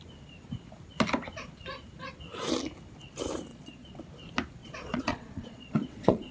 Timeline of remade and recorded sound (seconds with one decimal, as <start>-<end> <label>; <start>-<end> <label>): 0.0-3.5 recorded; 3.5-4.0 remade; 4.0-4.6 recorded; 4.6-6.3 remade